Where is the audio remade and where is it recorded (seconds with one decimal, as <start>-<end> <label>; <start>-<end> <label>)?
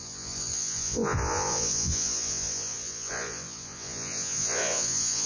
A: 0.0-5.3 remade